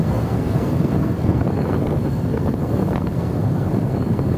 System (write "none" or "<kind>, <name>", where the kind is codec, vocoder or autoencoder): codec, SNAC